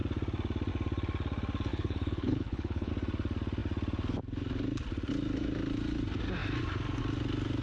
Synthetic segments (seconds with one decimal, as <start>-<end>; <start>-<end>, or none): 1.7-2.9